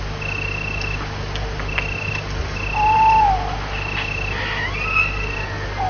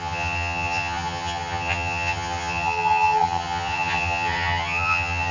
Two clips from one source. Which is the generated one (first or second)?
second